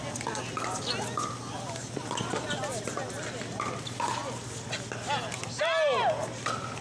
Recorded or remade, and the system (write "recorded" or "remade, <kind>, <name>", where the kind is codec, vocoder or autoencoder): recorded